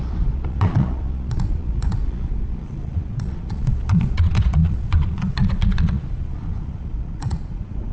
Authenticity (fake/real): fake